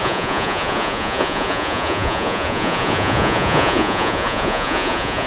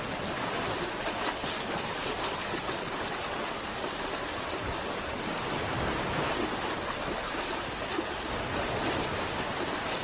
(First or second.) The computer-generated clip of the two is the first